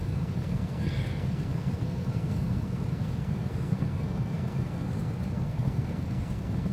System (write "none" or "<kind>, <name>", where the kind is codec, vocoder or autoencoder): codec, SNAC